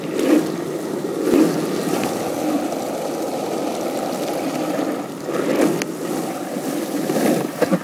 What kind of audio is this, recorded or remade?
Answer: recorded